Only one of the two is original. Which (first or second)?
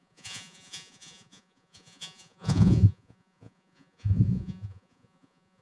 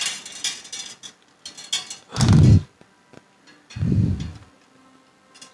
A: second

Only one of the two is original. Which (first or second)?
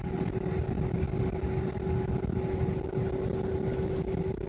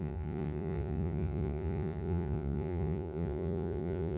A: first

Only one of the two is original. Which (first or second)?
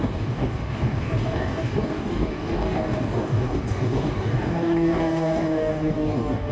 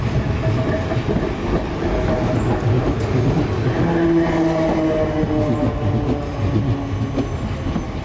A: second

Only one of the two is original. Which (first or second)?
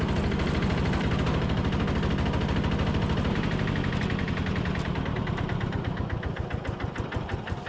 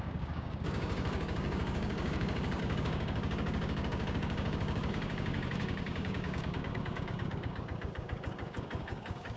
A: first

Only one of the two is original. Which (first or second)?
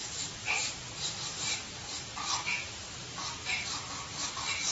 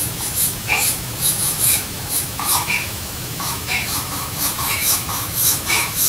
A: first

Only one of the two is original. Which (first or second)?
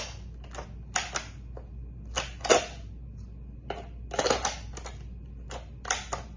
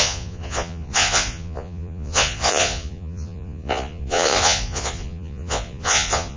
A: first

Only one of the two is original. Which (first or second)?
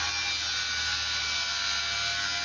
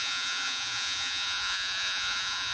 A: first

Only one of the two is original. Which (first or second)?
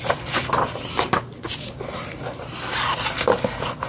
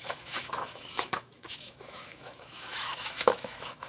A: first